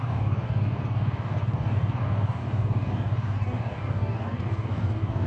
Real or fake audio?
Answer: fake